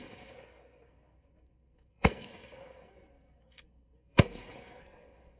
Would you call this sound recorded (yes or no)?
no